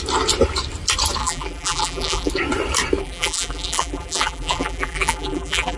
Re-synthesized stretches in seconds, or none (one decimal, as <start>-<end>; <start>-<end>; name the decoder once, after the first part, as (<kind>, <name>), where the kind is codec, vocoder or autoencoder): 1.2-2.3 (vocoder, BigVGAN v2); 3.0-5.8

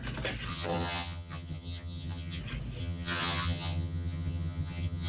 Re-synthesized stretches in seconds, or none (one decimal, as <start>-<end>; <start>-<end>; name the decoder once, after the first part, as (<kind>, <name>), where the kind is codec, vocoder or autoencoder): 0.5-2.4 (vocoder, HiFi-GAN); 2.8-5.1